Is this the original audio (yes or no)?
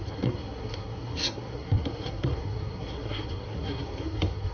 no